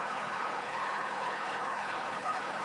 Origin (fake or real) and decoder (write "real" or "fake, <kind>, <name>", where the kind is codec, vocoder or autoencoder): fake, codec, HILCodec